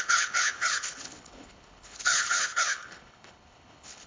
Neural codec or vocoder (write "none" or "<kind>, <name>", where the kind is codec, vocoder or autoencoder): codec, HILCodec